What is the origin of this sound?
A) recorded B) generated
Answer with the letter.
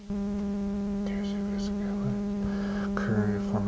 A